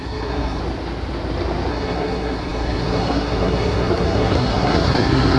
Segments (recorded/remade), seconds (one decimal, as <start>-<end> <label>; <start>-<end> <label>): 0.0-0.6 remade; 0.6-1.7 recorded; 1.7-5.4 remade